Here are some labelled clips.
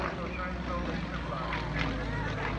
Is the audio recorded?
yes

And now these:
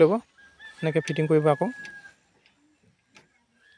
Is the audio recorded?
yes